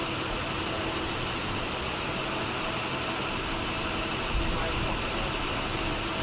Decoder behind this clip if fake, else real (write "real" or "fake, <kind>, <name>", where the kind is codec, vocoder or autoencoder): fake, vocoder, BigVGAN v2